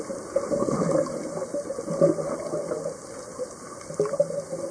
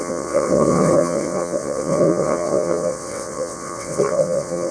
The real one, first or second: first